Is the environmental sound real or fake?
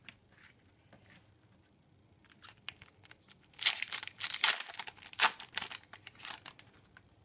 real